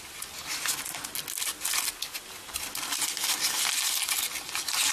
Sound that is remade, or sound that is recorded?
recorded